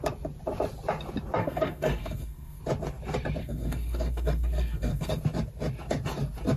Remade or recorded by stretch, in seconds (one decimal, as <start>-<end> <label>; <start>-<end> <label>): 0.0-1.4 recorded; 1.4-2.6 remade; 2.6-3.4 recorded; 3.4-5.2 remade; 5.2-6.6 recorded